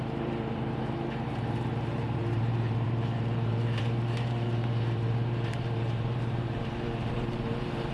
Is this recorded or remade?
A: remade